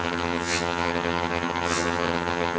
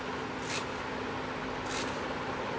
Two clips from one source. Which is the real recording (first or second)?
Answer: second